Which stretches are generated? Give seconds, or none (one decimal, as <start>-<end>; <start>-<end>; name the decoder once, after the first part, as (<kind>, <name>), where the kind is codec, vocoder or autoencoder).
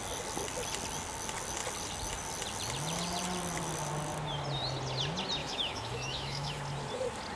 5.4-6.6 (autoencoder, DAC-VAE)